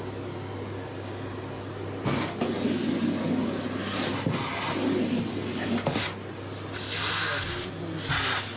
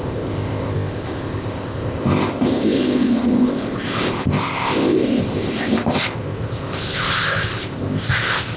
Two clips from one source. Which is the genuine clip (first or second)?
first